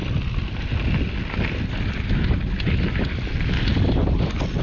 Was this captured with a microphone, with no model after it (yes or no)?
yes